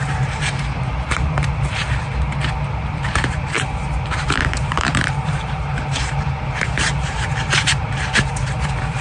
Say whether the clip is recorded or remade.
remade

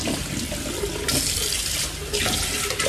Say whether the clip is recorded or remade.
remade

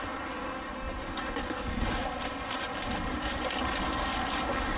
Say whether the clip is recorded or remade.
recorded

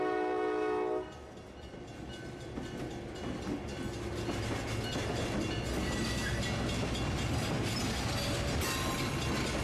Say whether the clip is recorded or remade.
recorded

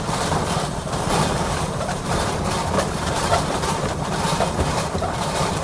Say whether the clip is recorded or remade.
remade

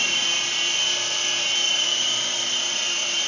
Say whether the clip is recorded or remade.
remade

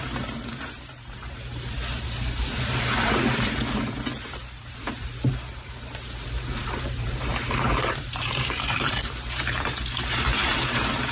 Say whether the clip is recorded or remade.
remade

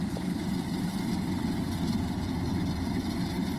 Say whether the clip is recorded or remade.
remade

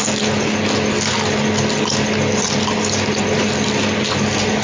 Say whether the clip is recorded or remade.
recorded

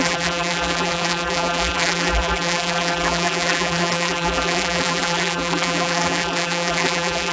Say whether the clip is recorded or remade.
remade